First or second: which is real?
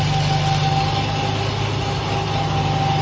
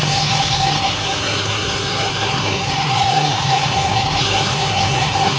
first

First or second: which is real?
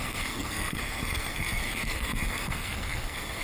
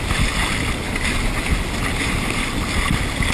second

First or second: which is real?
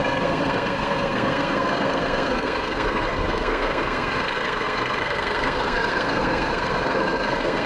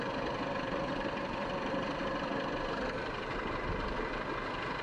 second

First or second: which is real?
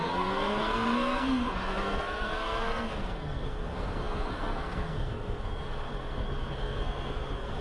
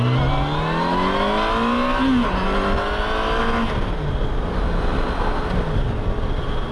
second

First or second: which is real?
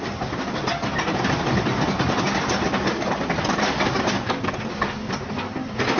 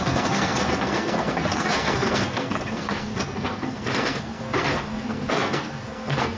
first